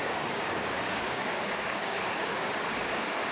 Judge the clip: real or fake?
fake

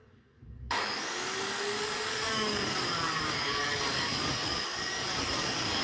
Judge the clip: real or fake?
fake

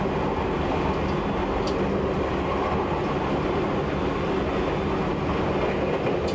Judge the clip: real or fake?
real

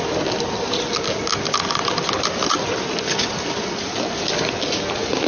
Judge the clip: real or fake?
real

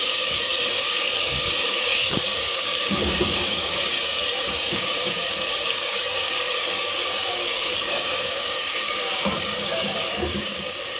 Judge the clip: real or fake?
fake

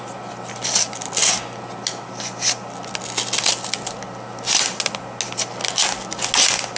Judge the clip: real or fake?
real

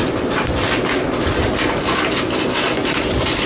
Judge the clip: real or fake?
real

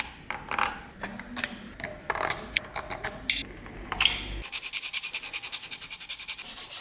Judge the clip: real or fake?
real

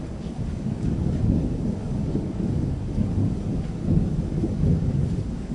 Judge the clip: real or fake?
fake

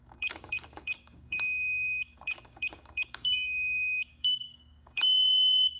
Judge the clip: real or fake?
fake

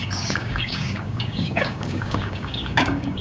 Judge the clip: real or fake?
fake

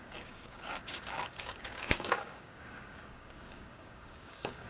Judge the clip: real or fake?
fake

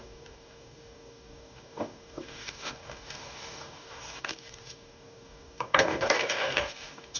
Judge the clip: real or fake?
fake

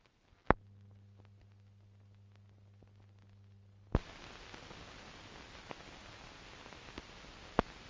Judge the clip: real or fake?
real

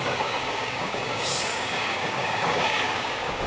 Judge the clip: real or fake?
fake